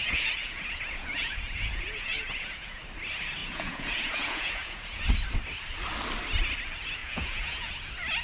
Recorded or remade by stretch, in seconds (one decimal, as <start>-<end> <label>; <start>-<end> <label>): 0.0-2.8 remade; 2.8-3.4 recorded; 3.4-5.0 remade; 5.0-7.0 recorded; 7.0-7.7 remade; 7.7-8.2 recorded